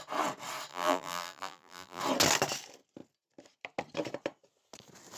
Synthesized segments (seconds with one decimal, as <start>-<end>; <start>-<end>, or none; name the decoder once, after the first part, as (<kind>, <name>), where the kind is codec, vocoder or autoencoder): 0.7-2.0 (vocoder, BigVGAN v2)